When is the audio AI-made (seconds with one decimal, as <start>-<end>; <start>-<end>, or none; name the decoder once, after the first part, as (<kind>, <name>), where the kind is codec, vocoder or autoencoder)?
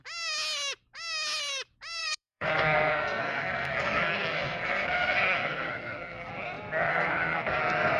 2.0-6.3 (codec, SNAC); 6.9-7.6